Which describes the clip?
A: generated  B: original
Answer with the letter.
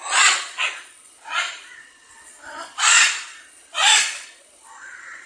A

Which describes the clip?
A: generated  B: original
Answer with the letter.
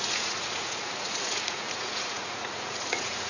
A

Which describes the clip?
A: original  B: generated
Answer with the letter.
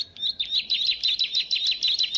A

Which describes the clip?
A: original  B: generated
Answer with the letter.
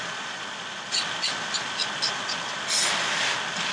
A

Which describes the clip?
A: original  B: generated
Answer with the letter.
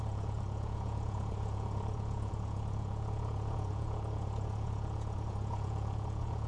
B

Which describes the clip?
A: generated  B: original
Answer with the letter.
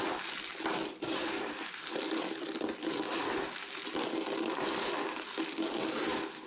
B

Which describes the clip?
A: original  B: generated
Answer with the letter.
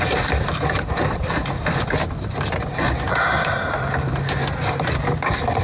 A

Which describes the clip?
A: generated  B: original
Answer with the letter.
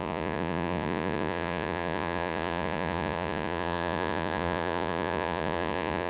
A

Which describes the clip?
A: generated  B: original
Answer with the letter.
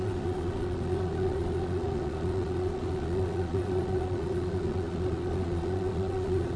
A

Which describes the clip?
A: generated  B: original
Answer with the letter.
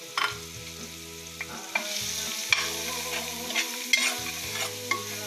B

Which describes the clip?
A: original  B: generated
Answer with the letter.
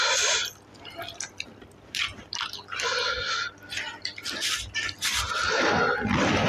A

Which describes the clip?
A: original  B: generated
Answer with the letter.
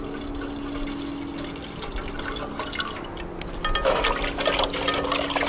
A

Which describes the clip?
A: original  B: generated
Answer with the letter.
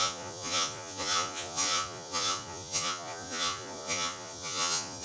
B